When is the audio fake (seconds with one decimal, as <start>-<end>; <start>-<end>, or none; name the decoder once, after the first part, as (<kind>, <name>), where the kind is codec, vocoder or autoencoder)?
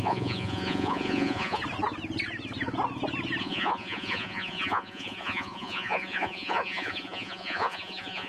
0.0-1.6 (vocoder, Vocos); 3.4-8.3